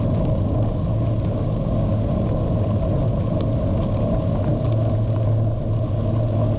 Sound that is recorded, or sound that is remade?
recorded